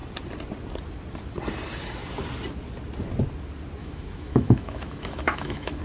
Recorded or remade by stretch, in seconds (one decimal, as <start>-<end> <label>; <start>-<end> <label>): 0.0-3.8 recorded; 3.8-5.8 remade